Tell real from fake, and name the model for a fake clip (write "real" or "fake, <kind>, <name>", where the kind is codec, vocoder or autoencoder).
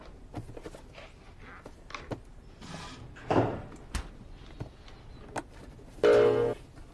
real